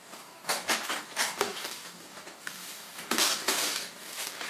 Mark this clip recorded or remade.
remade